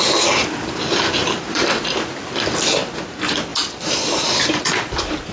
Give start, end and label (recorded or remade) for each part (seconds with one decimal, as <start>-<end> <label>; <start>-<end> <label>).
0.0-5.3 recorded